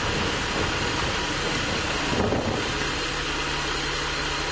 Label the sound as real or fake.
fake